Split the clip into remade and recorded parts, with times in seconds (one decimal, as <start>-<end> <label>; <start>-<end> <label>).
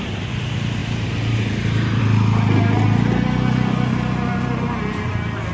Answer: 0.0-0.8 recorded; 0.8-2.0 remade; 2.0-5.5 recorded